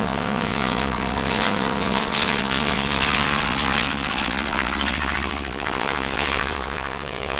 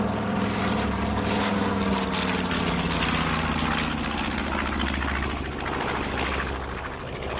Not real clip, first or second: first